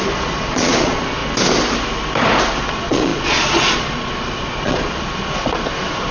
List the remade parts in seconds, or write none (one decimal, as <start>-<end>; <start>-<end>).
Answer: 0.0-1.2; 2.7-6.1

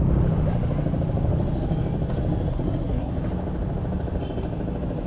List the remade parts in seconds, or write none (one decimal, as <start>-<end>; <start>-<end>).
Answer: 2.5-3.1